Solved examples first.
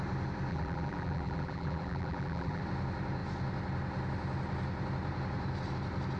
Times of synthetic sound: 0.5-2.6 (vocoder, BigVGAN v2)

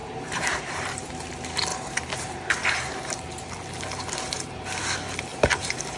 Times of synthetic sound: 0.0-0.6 (vocoder, BigVGAN v2); 1.7-3.5; 5.3-6.0